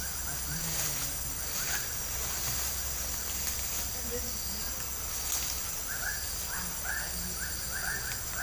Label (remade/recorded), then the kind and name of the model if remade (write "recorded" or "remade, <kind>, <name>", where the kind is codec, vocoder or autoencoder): recorded